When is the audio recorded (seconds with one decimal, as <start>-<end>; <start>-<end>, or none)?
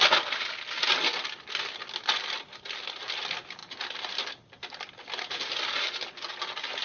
0.0-6.8